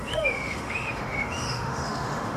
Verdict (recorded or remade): remade